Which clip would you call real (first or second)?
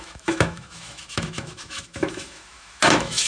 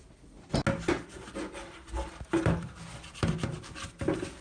second